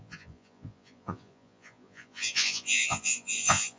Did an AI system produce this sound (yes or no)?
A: yes